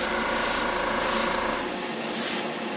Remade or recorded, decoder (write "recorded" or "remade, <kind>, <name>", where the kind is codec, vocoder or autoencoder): recorded